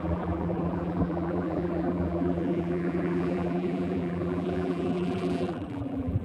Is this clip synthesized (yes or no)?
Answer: yes